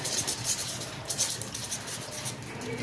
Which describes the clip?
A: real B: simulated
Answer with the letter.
A